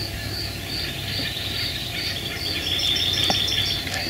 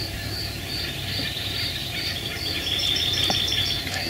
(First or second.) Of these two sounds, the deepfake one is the second